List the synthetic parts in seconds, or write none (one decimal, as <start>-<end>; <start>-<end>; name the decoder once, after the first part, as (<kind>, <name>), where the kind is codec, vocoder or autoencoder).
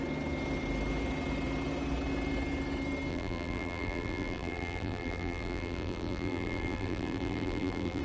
3.1-8.0 (vocoder, BigVGAN v2)